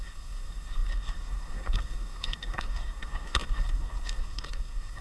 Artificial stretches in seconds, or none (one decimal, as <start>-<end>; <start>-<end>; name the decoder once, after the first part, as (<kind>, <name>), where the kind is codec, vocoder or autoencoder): 0.0-5.0 (codec, SNAC)